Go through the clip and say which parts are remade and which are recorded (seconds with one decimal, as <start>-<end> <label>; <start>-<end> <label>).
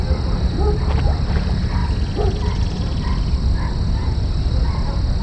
0.0-5.2 recorded